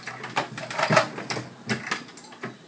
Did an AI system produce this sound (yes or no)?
no